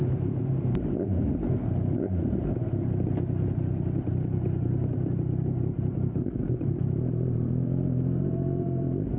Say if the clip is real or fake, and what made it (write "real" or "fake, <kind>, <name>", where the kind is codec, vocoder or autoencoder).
fake, vocoder, BigVGAN v2